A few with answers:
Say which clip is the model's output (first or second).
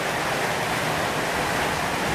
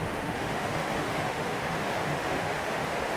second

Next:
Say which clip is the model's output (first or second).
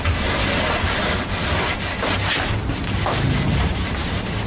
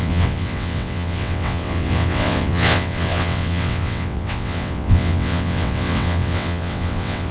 second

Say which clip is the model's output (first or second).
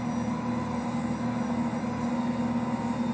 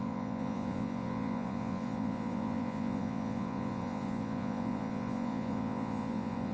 second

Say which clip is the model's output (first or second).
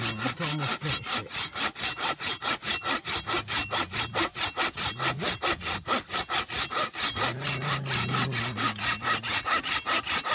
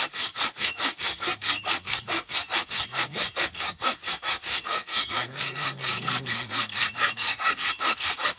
second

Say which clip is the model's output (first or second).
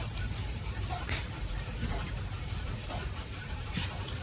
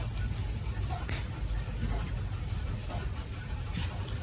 first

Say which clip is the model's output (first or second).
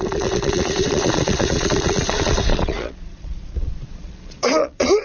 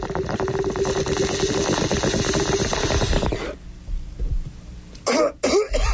first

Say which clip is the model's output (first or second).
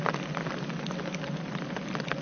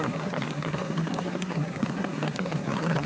second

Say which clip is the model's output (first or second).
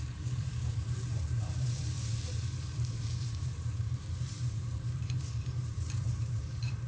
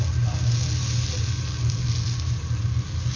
first